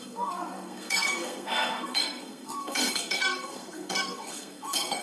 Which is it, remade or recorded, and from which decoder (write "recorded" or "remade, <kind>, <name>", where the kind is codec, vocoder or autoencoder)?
remade, codec, SNAC